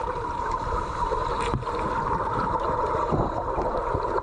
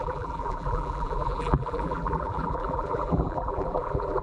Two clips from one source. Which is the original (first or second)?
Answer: first